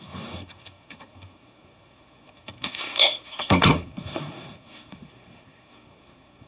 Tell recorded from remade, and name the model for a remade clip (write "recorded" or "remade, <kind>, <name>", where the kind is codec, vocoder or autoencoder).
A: remade, codec, SNAC